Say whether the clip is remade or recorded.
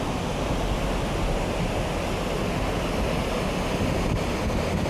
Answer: recorded